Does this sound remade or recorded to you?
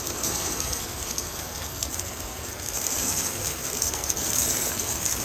remade